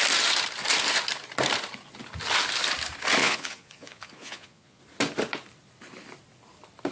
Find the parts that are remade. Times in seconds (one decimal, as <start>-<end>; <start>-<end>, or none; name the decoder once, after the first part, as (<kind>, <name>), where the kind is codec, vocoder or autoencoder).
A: 3.2-4.8 (vocoder, Vocos)